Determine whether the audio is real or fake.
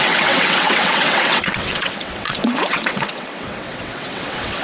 fake